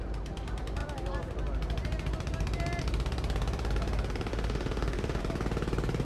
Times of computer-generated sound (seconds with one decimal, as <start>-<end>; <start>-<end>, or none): 4.3-5.2